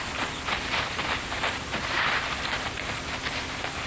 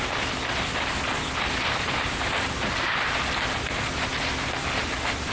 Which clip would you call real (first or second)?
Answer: second